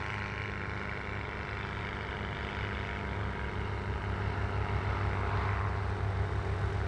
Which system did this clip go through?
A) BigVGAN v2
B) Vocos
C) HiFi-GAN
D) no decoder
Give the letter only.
D